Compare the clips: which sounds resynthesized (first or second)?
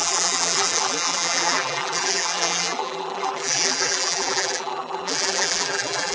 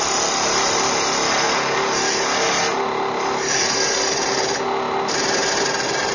first